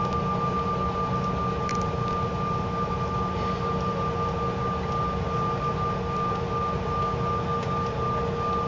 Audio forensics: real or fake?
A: real